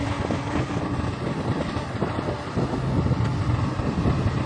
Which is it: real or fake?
real